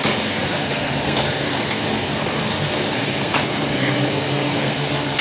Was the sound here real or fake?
fake